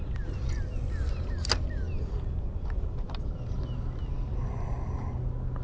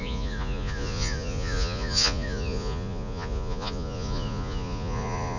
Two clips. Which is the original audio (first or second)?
first